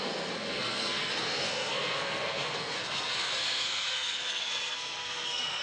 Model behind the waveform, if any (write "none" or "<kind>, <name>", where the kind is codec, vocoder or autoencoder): codec, SNAC